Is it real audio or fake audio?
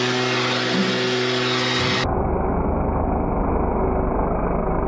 real